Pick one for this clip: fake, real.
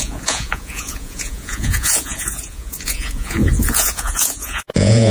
fake